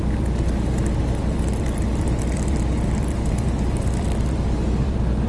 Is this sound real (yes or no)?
no